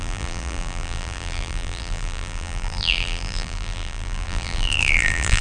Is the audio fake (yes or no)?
yes